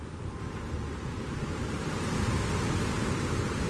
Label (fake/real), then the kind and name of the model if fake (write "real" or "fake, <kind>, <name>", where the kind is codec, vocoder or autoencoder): real